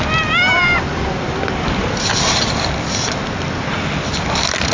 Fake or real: real